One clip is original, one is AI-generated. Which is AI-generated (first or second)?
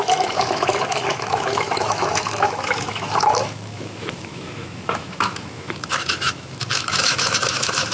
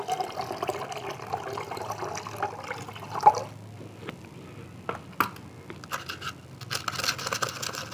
first